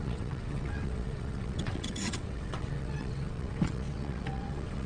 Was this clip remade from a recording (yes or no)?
yes